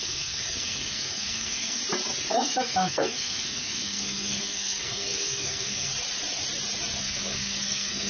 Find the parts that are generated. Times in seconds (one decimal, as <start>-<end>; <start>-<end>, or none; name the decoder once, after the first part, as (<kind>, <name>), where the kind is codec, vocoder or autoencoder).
0.0-1.8 (codec, SNAC); 2.3-5.9; 7.0-8.1